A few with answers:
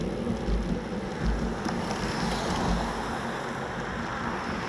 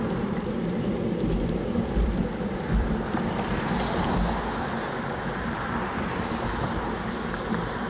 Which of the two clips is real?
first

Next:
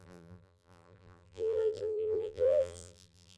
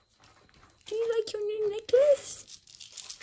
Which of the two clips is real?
second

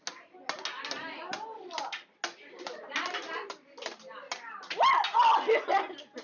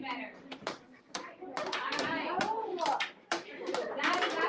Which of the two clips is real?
first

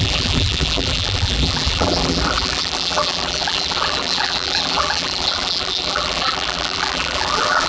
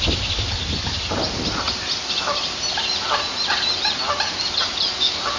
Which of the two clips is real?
second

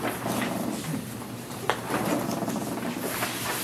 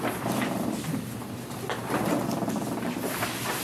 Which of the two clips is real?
first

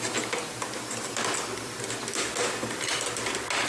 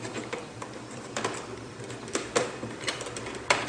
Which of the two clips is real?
first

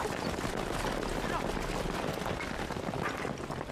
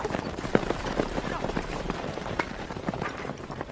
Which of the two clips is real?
first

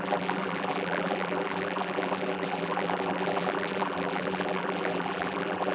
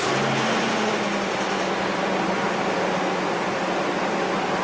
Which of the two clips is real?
second